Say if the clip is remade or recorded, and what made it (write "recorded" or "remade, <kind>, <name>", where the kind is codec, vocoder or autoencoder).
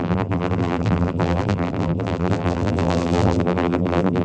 remade, vocoder, BigVGAN v2